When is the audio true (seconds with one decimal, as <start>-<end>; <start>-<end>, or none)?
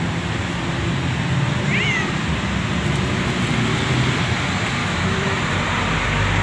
0.0-4.8; 5.4-6.4